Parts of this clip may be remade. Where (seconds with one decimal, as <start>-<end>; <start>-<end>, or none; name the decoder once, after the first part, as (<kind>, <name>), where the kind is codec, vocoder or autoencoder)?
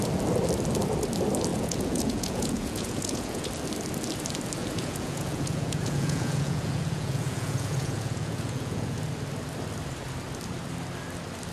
1.5-3.5 (vocoder, Vocos); 4.6-9.0